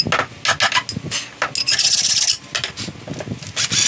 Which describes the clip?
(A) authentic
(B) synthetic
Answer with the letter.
A